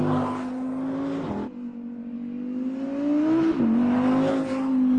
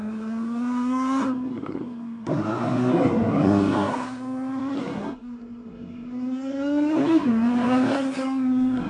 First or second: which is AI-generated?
second